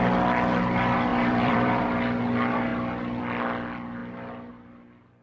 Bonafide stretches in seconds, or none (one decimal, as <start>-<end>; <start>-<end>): 0.0-1.1; 1.8-5.2